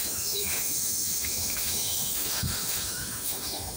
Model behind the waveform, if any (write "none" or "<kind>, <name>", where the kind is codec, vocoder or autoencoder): autoencoder, DAC-VAE